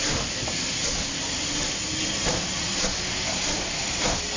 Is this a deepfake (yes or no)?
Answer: no